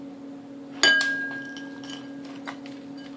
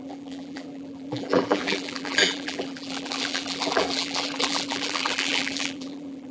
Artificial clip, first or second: second